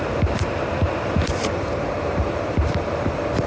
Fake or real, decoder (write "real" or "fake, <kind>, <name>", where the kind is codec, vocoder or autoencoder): fake, vocoder, BigVGAN v2